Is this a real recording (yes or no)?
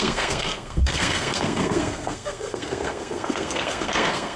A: no